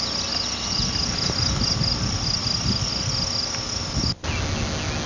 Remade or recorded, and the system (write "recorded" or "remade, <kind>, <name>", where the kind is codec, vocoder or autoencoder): recorded